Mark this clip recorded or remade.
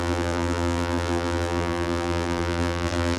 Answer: remade